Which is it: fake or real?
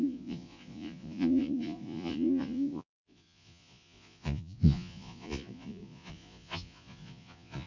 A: fake